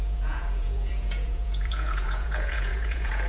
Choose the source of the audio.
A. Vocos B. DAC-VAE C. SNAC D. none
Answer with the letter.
A